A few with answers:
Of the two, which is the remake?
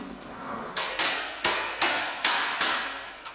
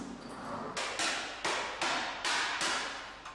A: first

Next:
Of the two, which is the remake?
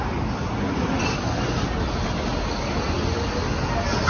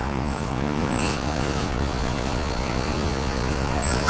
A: second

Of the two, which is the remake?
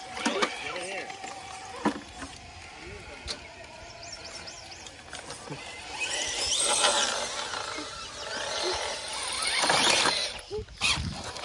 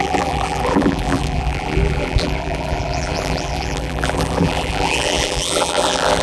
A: second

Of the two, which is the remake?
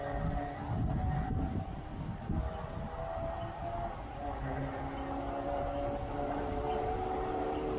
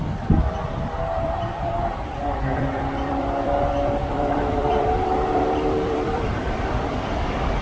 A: second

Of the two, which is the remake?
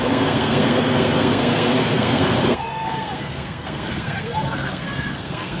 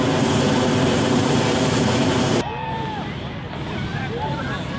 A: first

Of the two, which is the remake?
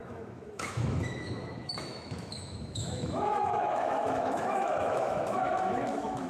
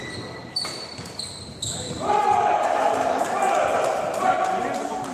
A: first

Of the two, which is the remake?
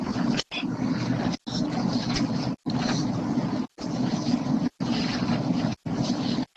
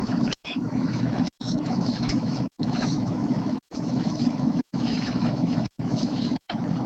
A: second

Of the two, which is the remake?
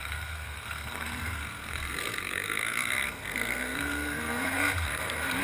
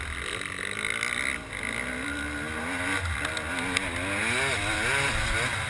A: first